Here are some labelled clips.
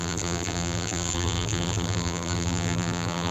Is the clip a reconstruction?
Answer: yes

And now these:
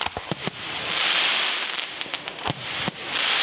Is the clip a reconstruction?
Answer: no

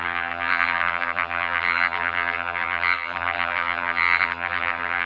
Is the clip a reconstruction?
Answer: yes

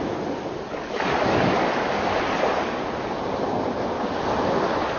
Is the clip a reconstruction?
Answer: no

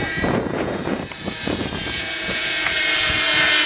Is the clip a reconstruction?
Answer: yes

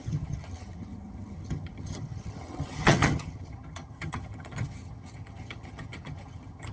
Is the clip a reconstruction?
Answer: yes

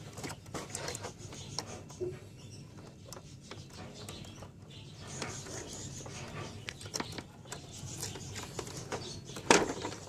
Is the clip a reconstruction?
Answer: no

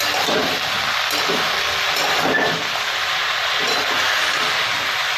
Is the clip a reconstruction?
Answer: no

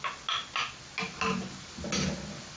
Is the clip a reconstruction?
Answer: no